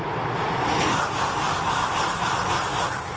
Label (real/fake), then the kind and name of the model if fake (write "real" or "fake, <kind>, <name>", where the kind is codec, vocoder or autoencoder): real